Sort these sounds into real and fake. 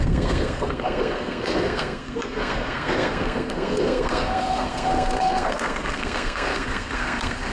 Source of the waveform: fake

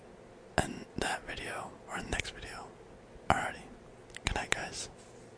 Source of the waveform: real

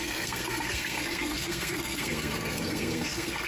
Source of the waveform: fake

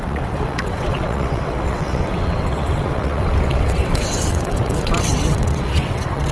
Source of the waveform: fake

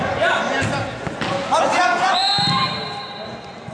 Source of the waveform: real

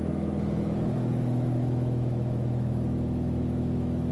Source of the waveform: fake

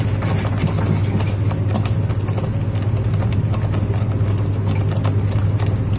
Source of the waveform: real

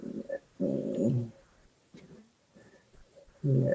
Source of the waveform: fake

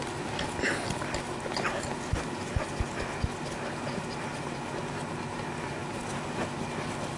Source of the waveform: real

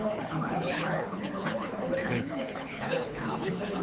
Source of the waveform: fake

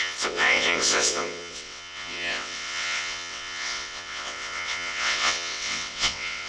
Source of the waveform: fake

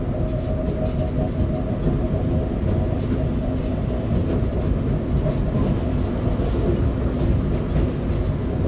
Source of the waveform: real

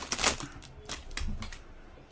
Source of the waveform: real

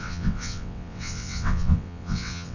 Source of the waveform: fake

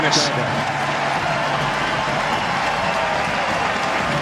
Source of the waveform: real